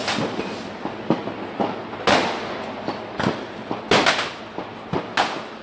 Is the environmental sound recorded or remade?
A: recorded